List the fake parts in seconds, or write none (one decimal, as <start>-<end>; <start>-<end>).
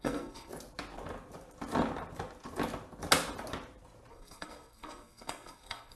0.0-0.5; 4.1-6.0